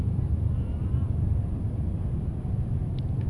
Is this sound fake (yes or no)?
no